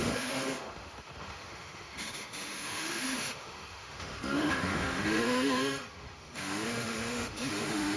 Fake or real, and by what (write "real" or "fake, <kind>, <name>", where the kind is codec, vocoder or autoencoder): fake, autoencoder, DAC-VAE